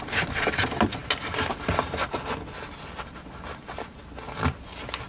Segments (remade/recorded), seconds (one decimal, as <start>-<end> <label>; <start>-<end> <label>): 0.0-5.1 recorded